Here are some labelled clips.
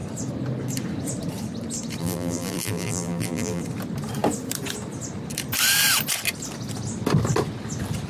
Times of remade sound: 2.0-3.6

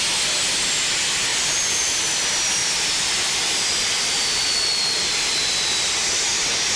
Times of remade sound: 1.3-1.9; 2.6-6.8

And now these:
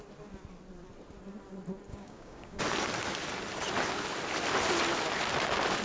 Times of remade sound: 1.9-2.6

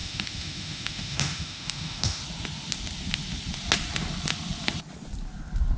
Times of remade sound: 0.0-2.2

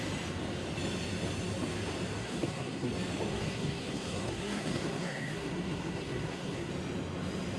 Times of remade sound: 2.2-2.9; 3.3-6.7

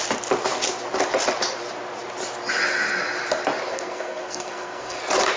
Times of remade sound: 3.7-5.0